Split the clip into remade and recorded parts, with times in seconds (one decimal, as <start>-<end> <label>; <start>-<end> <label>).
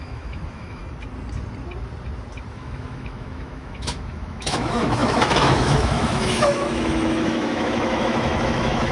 0.0-0.8 remade; 0.8-2.5 recorded; 2.5-8.9 remade